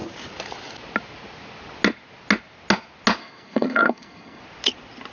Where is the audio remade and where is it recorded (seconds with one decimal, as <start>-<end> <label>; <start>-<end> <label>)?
0.0-3.2 recorded; 3.2-4.4 remade; 4.4-5.1 recorded